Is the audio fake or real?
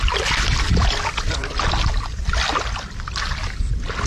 real